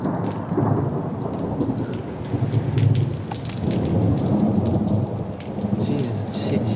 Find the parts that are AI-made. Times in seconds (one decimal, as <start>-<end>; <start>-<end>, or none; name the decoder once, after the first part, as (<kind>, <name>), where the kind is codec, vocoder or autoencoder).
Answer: 4.5-5.3 (vocoder, BigVGAN v2)